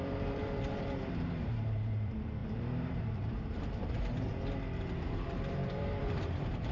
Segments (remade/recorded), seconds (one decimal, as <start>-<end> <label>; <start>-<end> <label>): 0.0-4.3 remade; 4.3-5.3 recorded; 5.3-6.7 remade